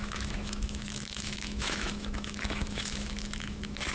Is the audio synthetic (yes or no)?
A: yes